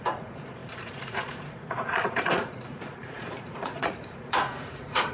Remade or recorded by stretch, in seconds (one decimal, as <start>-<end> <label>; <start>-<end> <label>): 0.0-5.1 remade